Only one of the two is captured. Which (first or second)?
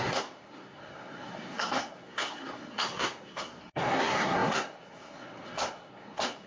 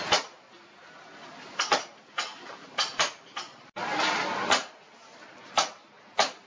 second